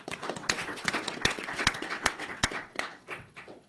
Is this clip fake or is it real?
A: fake